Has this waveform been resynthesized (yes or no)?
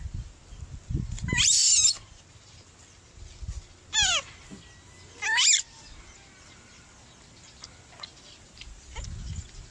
no